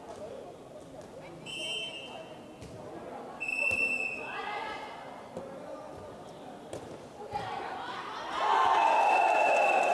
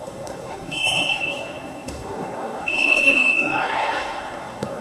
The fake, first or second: second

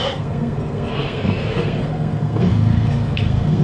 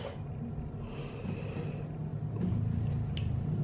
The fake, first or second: first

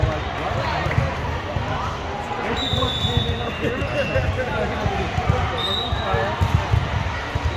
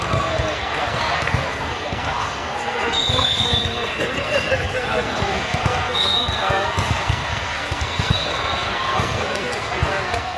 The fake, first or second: second